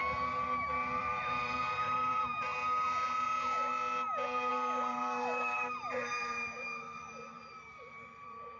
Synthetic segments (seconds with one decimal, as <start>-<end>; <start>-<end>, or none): 1.0-2.5; 4.5-8.6